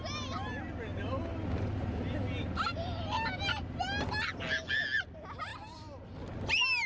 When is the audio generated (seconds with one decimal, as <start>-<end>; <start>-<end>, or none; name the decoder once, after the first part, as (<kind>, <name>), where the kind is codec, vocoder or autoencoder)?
none